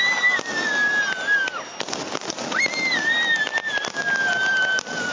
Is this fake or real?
real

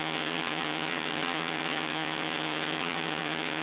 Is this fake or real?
fake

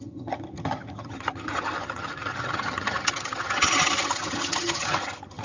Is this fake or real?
fake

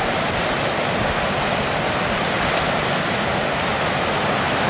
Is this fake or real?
real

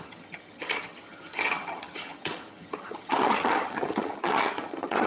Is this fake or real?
fake